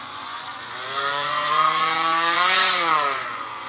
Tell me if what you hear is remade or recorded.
remade